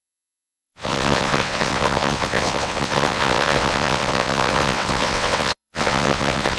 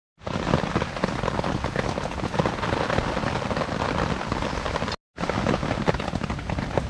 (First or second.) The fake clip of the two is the first